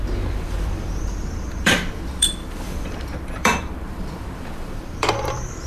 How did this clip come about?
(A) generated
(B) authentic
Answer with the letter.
A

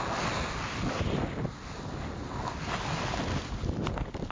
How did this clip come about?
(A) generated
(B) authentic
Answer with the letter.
B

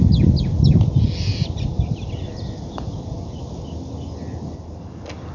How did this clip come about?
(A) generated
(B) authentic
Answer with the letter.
B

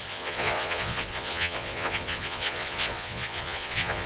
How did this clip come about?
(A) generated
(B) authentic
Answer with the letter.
A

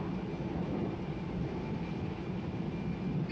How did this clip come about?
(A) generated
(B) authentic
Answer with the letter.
B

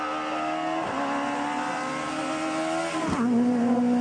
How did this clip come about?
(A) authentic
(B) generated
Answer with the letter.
A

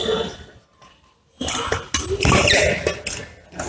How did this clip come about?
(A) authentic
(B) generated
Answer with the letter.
A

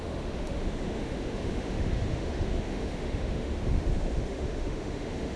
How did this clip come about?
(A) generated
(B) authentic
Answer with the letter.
A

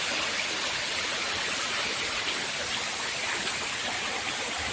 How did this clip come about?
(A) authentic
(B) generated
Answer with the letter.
A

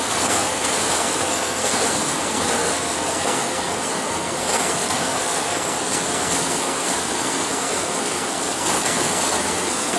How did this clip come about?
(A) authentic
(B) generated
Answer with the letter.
B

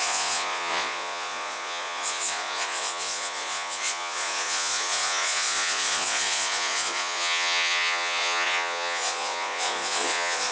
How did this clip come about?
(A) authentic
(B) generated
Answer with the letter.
B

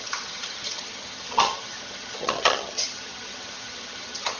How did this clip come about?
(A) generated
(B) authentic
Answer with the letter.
A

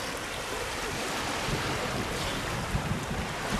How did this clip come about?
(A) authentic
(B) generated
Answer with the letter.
A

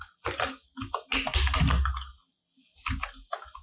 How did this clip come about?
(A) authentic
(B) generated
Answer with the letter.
A